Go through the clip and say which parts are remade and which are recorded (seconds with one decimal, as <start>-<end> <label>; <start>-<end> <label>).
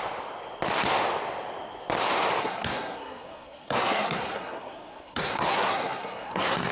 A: 0.0-2.4 recorded; 2.4-6.7 remade